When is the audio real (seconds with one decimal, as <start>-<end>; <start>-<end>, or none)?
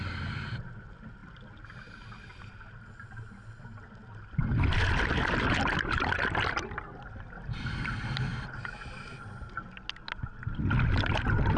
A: 0.0-11.6